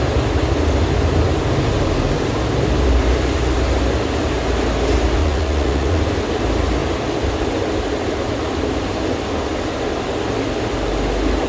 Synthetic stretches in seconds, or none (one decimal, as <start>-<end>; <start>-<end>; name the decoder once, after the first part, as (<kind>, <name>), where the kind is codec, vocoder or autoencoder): 5.2-6.0 (vocoder, Vocos)